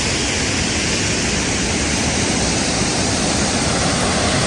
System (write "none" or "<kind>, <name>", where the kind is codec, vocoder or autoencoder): none